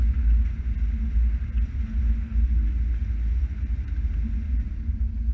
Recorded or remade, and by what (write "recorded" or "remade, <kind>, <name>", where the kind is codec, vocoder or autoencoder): recorded